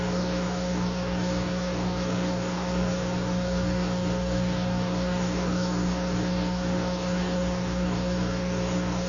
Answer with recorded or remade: remade